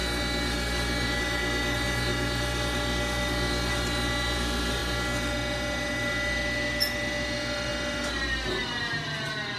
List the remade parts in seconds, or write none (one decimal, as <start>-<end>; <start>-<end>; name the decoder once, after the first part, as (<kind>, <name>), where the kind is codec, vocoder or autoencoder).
none